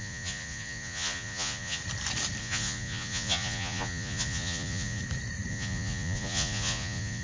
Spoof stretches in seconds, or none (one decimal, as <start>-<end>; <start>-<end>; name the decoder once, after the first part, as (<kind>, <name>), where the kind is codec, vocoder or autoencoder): 0.0-1.8 (vocoder, Vocos); 2.4-5.0; 5.5-7.2

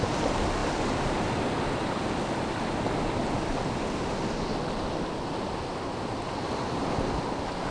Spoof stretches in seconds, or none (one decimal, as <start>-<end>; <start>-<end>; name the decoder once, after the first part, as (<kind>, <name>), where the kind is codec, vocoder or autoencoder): none

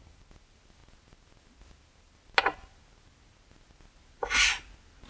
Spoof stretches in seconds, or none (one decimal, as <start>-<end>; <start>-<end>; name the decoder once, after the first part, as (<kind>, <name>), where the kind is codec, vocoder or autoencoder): none

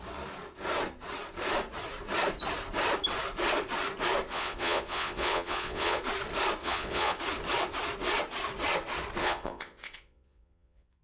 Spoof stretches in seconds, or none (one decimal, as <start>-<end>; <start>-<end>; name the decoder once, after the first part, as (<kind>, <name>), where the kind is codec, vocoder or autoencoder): 4.3-6.0 (vocoder, Vocos); 6.6-7.2; 9.2-11.0

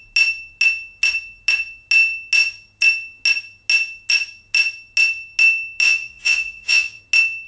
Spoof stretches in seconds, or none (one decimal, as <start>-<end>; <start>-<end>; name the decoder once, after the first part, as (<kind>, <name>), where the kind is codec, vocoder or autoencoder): 5.8-7.0 (vocoder, Vocos)

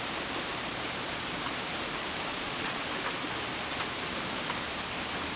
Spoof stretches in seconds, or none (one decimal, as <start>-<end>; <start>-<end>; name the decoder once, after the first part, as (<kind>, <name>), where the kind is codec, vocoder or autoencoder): 2.3-2.8 (vocoder, Vocos)